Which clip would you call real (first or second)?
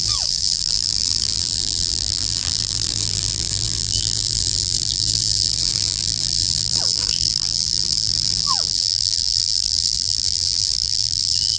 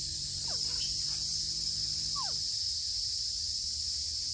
second